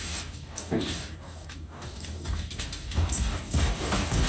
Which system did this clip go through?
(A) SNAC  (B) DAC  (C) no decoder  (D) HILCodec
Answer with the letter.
B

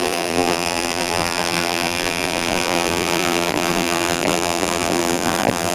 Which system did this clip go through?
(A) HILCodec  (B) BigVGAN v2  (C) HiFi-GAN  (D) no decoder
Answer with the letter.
B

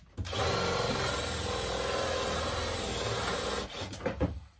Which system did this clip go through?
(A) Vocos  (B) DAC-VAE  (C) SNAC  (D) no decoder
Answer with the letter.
D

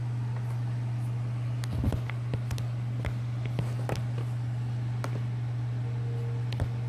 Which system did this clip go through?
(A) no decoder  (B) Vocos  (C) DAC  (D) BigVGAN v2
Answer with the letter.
A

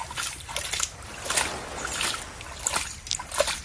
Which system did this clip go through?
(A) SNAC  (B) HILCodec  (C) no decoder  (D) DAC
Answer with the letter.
C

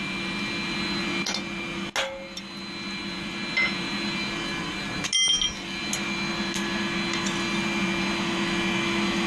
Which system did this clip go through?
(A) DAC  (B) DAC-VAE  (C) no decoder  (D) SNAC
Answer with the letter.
C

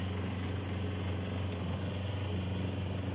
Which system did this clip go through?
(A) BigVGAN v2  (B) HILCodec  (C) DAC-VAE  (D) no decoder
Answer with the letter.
D